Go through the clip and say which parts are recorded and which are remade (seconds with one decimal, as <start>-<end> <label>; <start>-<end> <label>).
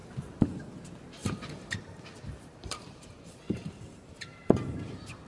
0.0-0.6 remade; 0.6-1.2 recorded; 1.2-4.4 remade; 4.4-5.3 recorded